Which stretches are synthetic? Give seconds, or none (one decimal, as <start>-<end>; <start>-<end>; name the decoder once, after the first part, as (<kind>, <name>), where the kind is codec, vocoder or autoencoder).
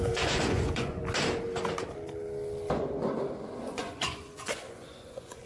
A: 0.0-1.0 (vocoder, Vocos); 3.6-5.5